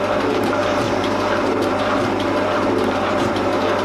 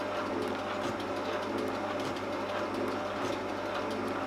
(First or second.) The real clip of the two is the second